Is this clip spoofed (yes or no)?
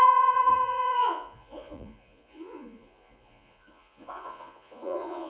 yes